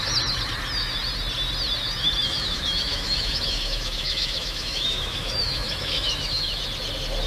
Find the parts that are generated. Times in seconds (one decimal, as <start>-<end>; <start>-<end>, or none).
2.2-6.6